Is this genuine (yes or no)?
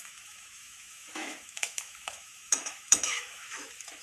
no